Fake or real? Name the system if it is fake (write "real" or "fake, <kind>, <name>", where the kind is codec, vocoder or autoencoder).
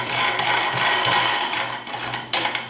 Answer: real